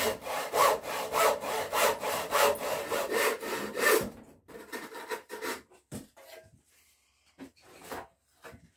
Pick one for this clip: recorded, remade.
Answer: remade